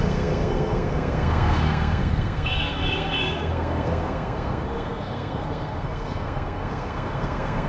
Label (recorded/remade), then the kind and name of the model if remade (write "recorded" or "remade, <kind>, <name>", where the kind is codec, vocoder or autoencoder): remade, codec, SNAC